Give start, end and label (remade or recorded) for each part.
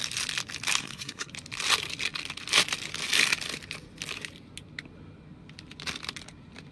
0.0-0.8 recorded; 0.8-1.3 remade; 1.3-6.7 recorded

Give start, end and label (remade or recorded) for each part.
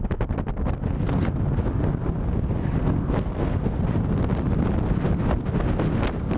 0.0-2.8 recorded; 2.8-3.8 remade; 3.8-6.4 recorded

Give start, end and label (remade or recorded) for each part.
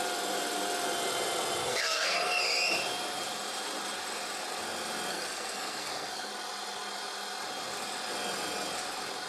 0.0-1.6 recorded; 1.6-2.4 remade; 2.4-5.1 recorded; 5.1-6.3 remade; 6.3-9.3 recorded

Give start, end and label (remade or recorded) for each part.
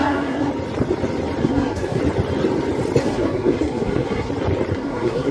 0.0-0.5 remade; 0.5-1.4 recorded; 1.4-2.0 remade; 2.0-3.0 recorded; 3.0-4.3 remade; 4.3-4.7 recorded; 4.7-5.3 remade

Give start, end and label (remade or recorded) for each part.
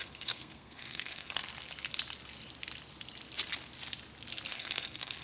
0.0-1.4 remade; 1.4-4.5 recorded; 4.5-5.2 remade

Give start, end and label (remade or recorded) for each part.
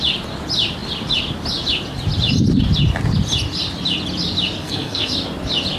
0.0-4.6 recorded; 4.6-5.1 remade; 5.1-5.8 recorded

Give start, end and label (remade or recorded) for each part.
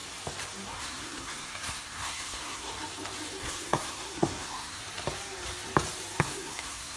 0.0-0.8 recorded; 0.8-2.7 remade; 2.7-3.4 recorded; 3.4-4.8 remade; 4.8-6.2 recorded; 6.2-7.0 remade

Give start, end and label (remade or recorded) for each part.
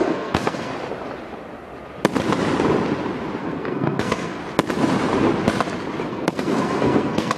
0.0-0.7 remade; 0.7-3.4 recorded; 3.4-4.4 remade; 4.4-6.1 recorded; 6.1-7.4 remade